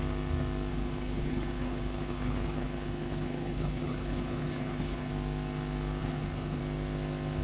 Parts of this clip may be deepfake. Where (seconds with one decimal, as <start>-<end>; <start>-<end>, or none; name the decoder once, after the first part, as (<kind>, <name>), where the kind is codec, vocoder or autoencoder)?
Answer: 0.7-5.1 (codec, HILCodec); 6.0-6.6